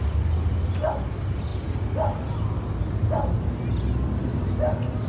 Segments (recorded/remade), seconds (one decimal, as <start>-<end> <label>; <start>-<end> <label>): 0.0-5.1 recorded